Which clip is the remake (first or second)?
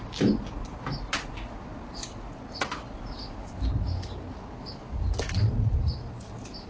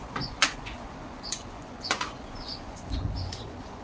second